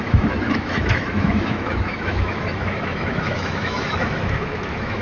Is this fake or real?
fake